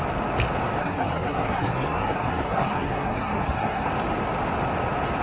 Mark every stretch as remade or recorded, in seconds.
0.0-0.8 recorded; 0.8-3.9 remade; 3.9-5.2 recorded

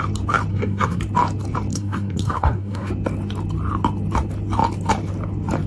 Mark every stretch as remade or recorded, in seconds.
0.0-0.5 recorded; 0.5-1.0 remade; 1.0-1.7 recorded; 1.7-2.9 remade; 2.9-5.7 recorded

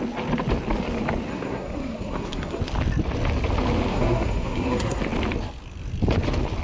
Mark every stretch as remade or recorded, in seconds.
0.0-1.3 recorded; 1.3-2.6 remade; 2.6-3.9 recorded; 3.9-5.0 remade; 5.0-6.6 recorded

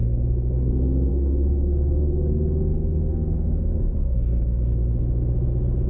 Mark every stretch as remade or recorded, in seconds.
0.0-0.7 remade; 0.7-1.1 recorded; 1.1-4.6 remade; 4.6-5.9 recorded

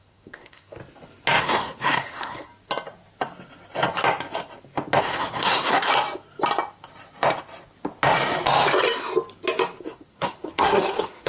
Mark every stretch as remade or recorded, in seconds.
0.0-0.8 remade; 0.8-1.4 recorded; 1.4-2.5 remade; 2.5-5.0 recorded; 5.0-5.9 remade; 5.9-9.8 recorded; 9.8-11.3 remade

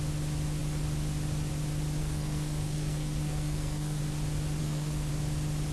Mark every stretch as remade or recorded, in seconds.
0.0-2.0 recorded; 2.0-4.0 remade; 4.0-4.6 recorded; 4.6-5.1 remade; 5.1-5.7 recorded